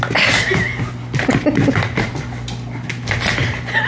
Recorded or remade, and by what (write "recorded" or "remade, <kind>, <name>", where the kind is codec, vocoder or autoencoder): recorded